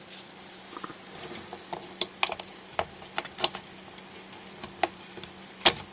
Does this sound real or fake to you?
real